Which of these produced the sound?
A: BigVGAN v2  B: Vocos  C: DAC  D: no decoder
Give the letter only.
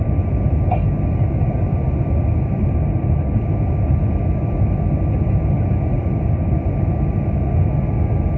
D